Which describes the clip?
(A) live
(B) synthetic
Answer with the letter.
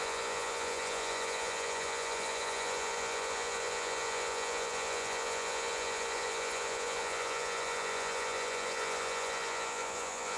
B